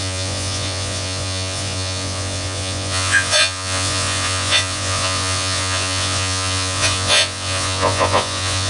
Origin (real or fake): fake